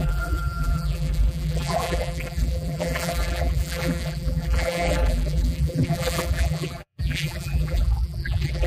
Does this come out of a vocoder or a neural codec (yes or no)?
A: yes